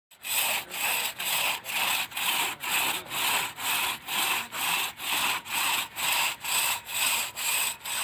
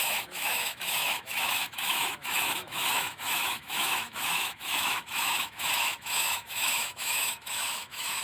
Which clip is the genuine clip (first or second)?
first